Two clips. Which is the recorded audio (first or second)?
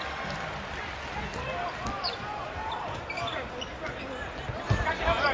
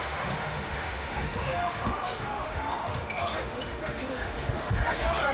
first